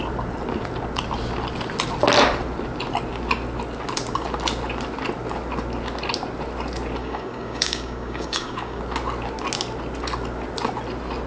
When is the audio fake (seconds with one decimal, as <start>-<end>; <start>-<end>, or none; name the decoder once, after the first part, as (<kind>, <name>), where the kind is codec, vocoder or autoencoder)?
7.0-8.8 (codec, DAC)